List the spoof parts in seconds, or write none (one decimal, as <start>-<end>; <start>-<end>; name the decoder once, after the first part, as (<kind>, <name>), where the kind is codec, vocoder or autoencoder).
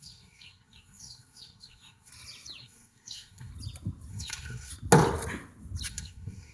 0.0-2.1 (codec, SNAC); 2.6-3.5; 4.1-4.7; 5.9-6.5